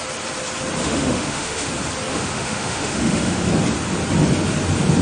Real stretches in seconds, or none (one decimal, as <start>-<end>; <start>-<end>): 0.0-0.8; 1.7-2.1; 3.5-5.0